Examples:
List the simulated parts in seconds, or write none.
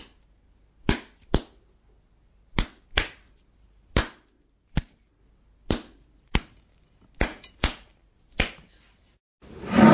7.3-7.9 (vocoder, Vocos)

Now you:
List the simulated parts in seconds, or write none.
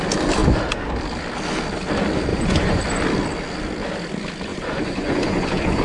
2.3-2.8 (vocoder, Vocos); 4.5-5.8